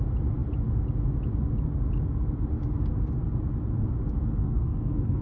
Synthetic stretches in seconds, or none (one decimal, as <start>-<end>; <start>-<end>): 4.4-5.2